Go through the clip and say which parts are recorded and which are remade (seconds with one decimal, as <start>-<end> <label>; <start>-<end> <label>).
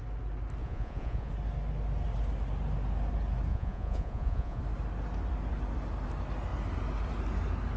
0.0-0.6 recorded; 0.6-1.3 remade; 1.3-3.5 recorded; 3.5-4.6 remade; 4.6-7.8 recorded